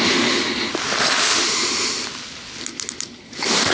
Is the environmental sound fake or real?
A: real